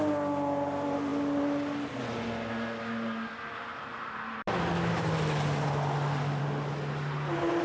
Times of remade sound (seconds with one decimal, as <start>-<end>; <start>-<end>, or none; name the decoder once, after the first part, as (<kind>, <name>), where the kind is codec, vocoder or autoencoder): none